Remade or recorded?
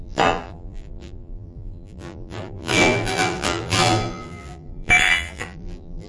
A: remade